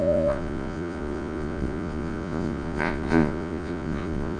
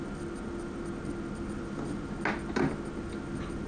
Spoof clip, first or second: first